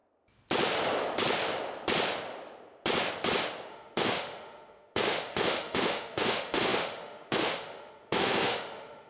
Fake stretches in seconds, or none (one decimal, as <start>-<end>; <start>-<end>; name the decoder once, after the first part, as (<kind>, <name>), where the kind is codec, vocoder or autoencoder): 3.7-9.1 (autoencoder, DAC-VAE)